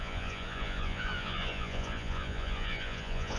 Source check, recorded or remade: remade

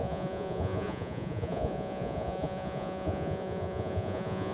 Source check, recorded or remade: remade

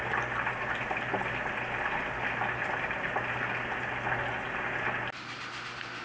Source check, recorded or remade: recorded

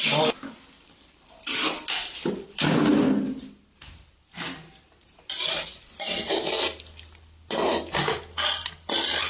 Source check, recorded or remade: recorded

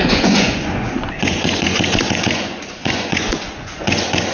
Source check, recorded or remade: remade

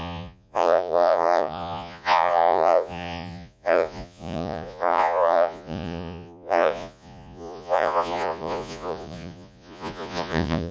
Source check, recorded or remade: remade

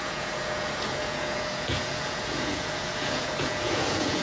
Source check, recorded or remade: remade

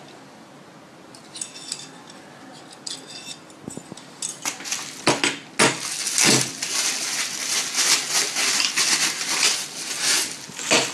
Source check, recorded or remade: recorded